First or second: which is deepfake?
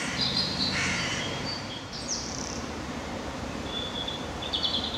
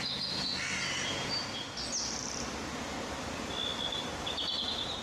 first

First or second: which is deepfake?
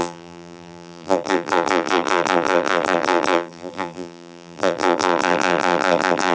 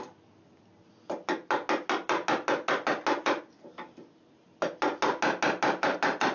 first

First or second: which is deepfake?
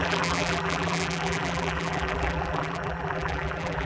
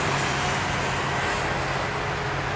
first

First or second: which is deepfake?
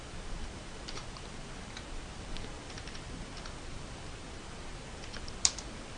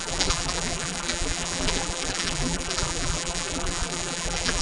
second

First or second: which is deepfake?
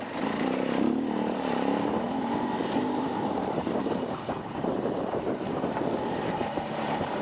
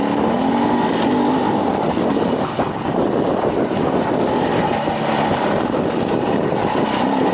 first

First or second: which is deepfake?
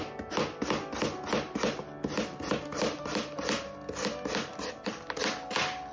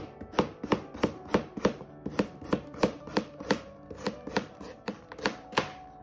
second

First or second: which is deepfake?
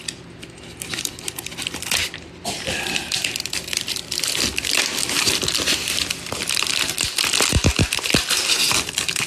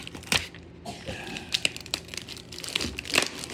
first